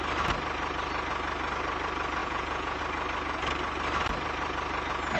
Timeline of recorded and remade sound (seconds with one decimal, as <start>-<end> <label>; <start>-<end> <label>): 0.0-2.2 recorded; 2.2-2.8 remade; 2.8-5.2 recorded